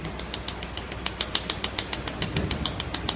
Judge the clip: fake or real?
real